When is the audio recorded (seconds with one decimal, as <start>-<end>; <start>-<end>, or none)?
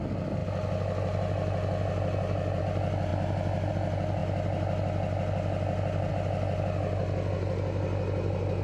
0.0-8.6